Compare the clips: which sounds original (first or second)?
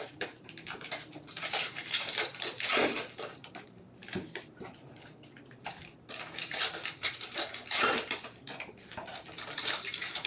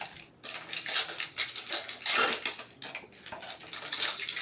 second